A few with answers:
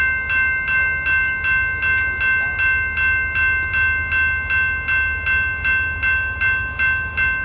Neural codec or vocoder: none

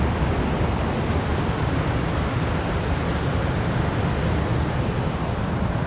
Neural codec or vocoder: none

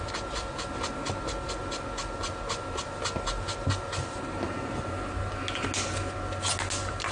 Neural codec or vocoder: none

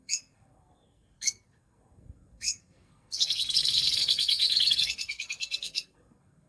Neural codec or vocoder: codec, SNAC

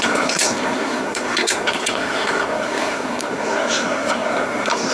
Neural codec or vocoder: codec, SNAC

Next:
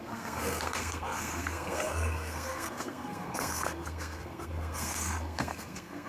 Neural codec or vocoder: codec, SNAC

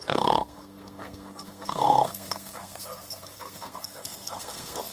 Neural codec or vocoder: codec, SNAC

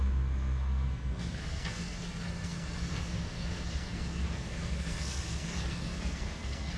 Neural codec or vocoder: codec, SNAC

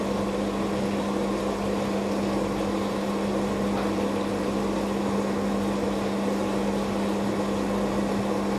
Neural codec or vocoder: none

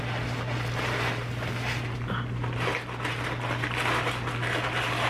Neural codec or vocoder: none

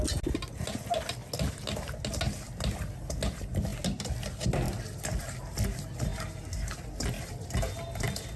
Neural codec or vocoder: none